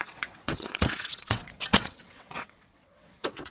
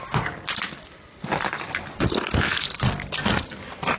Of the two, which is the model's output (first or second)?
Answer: first